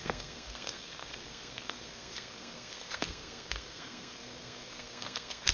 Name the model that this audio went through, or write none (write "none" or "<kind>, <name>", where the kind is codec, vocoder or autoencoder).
codec, SNAC